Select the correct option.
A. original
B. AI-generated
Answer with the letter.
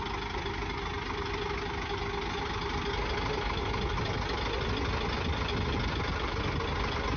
A